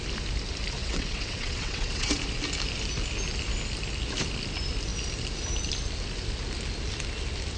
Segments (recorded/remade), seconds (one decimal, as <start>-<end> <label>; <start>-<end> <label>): 0.0-0.8 recorded; 0.8-2.2 remade; 2.2-7.6 recorded